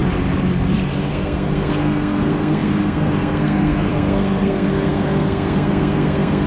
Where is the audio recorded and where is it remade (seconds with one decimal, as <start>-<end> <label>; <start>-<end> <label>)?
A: 0.0-1.1 recorded; 1.1-6.5 remade